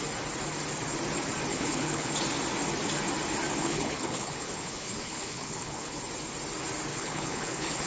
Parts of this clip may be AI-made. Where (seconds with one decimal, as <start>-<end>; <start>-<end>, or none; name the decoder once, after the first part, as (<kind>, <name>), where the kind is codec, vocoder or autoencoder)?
1.5-2.1 (codec, HILCodec); 3.6-6.0; 6.9-7.9